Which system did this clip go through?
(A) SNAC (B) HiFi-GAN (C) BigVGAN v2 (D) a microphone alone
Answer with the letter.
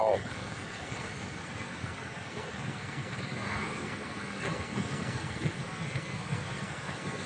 A